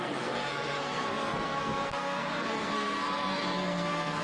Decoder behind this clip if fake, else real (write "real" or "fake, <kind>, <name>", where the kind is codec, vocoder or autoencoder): fake, codec, SNAC